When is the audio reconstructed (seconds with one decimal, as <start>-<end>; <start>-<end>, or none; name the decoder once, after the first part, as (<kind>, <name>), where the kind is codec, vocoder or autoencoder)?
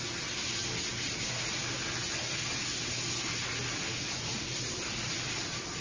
none